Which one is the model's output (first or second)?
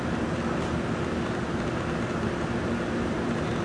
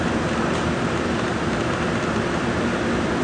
second